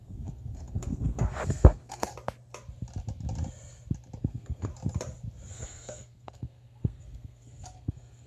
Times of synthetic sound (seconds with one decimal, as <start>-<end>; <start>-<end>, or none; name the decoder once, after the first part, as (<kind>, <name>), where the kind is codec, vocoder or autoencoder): 0.0-2.1 (codec, SNAC); 4.2-4.7; 5.5-8.3